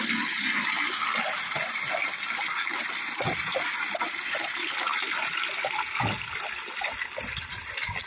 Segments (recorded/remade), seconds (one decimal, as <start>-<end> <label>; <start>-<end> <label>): 0.0-8.1 recorded